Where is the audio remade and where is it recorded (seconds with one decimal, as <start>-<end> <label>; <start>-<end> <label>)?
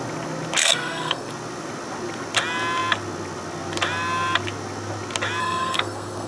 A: 0.0-0.6 recorded; 0.6-1.3 remade; 1.3-5.4 recorded; 5.4-6.3 remade